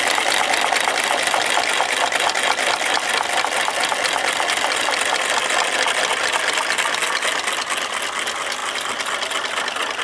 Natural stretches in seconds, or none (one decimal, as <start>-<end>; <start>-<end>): 0.0-10.0